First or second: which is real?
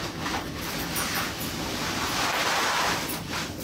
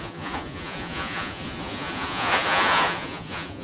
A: first